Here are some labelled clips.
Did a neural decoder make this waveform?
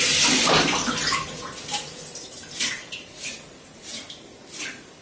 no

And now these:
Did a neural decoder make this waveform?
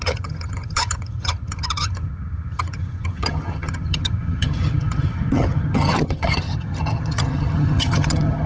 yes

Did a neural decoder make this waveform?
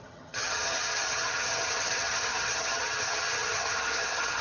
yes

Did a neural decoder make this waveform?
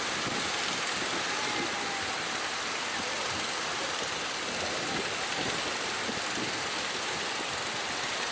no